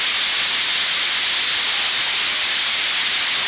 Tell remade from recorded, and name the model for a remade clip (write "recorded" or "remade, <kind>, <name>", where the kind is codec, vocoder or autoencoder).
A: recorded